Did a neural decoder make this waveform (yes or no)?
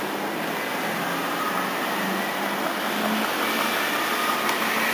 no